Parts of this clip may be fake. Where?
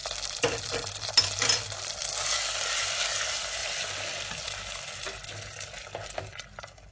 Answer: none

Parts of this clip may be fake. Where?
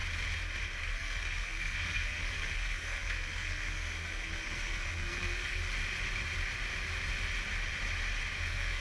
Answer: 0.8-5.6 (codec, SNAC); 8.4-8.8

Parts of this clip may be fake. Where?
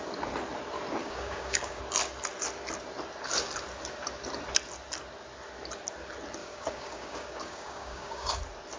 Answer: 1.0-1.8 (codec, DAC); 6.4-8.4